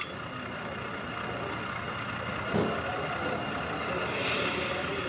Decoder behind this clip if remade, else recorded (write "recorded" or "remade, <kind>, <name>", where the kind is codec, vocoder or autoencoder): recorded